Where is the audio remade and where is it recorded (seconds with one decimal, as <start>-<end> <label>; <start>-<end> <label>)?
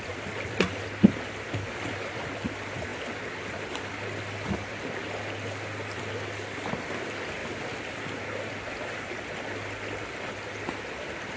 0.0-11.4 recorded